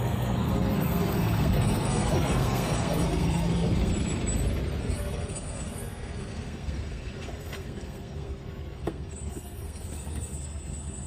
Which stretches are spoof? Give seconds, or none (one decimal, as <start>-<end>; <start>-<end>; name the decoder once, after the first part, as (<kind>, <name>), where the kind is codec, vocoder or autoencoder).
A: 0.0-3.9 (codec, SNAC); 4.8-11.1